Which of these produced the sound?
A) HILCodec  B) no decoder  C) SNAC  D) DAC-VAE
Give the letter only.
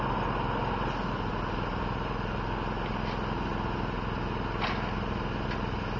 B